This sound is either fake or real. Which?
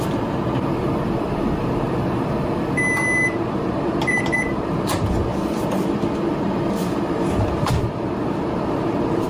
fake